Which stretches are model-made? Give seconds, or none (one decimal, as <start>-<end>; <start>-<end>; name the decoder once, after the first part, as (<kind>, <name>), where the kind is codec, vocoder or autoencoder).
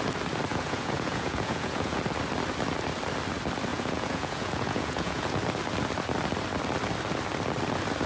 0.5-2.0 (vocoder, Vocos); 3.7-5.4